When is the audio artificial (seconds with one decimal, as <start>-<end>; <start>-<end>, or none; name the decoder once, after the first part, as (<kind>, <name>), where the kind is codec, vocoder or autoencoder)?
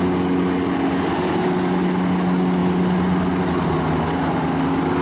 none